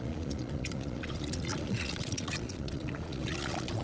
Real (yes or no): no